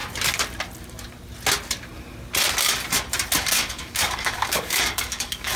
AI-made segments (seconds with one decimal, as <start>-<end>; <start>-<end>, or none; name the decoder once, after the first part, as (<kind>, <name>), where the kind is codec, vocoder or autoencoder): 3.4-5.6 (codec, DAC)